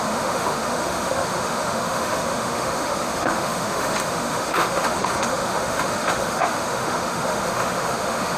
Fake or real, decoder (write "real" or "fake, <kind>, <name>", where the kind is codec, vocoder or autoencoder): fake, autoencoder, DAC-VAE